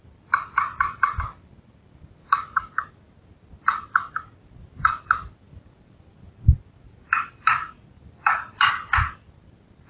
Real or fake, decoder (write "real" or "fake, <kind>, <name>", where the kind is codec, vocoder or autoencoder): real